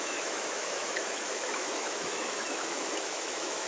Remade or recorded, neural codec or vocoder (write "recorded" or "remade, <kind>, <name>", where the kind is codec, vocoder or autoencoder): remade, autoencoder, DAC-VAE